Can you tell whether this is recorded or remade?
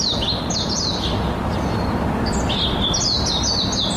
recorded